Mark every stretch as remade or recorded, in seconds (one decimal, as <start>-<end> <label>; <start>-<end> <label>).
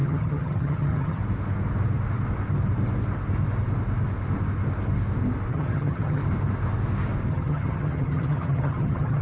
0.0-1.2 remade; 1.2-5.5 recorded; 5.5-6.2 remade; 6.2-7.3 recorded; 7.3-9.2 remade